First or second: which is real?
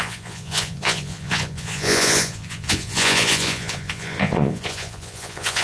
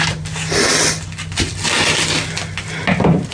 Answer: second